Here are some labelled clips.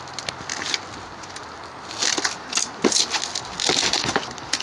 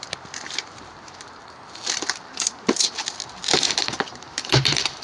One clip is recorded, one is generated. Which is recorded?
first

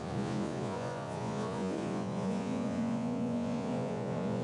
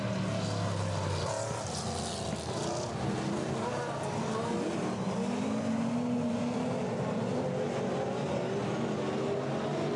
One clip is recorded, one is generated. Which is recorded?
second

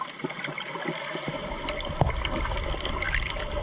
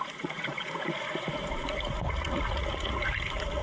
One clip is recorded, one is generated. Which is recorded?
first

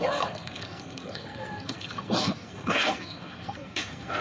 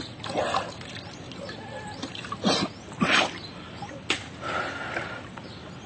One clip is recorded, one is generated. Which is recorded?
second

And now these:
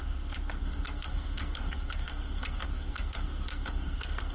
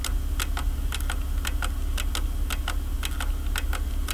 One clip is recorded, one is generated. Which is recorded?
second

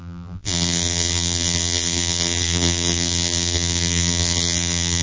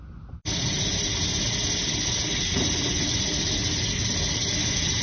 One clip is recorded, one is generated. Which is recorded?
second